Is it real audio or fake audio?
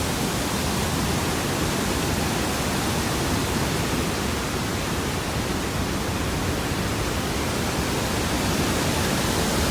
real